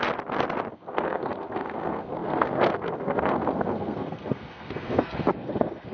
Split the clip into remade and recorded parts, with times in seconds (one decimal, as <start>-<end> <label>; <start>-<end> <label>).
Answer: 0.0-0.7 recorded; 0.7-5.9 remade